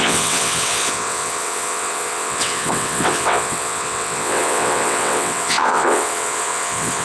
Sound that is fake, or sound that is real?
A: fake